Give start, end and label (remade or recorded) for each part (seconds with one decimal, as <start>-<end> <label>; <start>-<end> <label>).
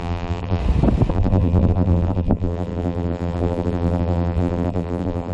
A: 0.0-0.6 remade; 0.6-1.1 recorded; 1.1-5.3 remade